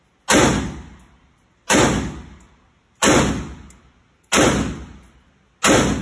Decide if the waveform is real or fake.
real